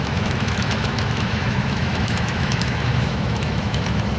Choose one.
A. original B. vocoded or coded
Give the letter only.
B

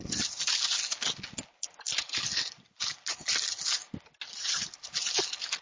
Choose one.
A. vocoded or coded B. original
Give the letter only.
B